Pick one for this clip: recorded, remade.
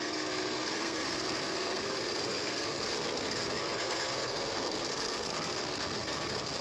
remade